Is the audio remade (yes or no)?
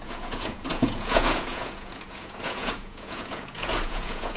yes